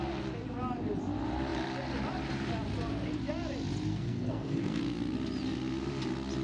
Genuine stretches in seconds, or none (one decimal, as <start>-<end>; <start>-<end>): 0.0-3.9; 4.8-6.4